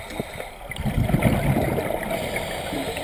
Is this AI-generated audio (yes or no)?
no